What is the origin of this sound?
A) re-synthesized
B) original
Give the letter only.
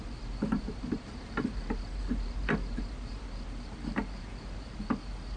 A